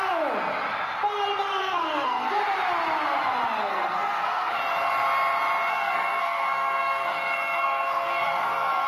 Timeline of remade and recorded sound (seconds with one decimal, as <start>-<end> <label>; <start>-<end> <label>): 0.0-1.6 recorded; 1.6-2.4 remade; 2.4-3.7 recorded; 3.7-4.6 remade; 4.6-5.7 recorded; 5.7-8.9 remade